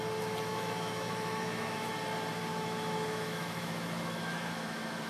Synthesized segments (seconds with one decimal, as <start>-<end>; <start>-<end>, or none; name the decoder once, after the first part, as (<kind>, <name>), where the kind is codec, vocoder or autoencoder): 0.5-1.9 (autoencoder, DAC-VAE); 2.5-5.1

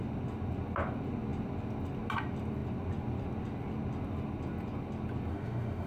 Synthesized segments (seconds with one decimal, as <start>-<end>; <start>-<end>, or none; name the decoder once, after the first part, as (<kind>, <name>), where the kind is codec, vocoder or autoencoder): 5.3-5.9 (autoencoder, DAC-VAE)

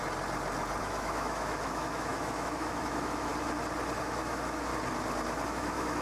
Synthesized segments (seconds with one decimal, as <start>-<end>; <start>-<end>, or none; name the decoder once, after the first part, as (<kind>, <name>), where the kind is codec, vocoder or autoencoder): 0.8-3.3 (autoencoder, DAC-VAE); 4.0-4.7; 5.5-6.0

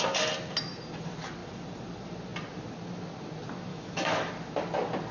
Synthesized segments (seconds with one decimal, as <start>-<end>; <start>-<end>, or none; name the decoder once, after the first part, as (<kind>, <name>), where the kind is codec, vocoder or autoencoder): 3.7-4.3 (autoencoder, DAC-VAE)

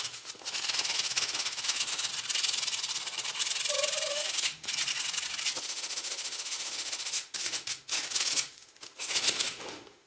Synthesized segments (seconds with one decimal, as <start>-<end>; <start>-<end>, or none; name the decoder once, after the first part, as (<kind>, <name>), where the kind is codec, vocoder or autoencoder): 0.0-2.1 (autoencoder, DAC-VAE); 4.1-4.7; 5.6-10.1

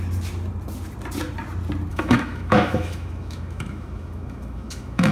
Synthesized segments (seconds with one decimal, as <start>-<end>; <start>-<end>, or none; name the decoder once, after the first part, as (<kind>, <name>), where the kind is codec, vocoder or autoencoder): 1.9-5.1 (autoencoder, DAC-VAE)

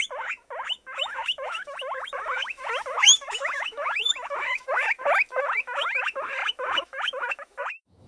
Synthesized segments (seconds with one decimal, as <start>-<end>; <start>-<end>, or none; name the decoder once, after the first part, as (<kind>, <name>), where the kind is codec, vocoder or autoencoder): 0.0-8.1 (autoencoder, DAC-VAE)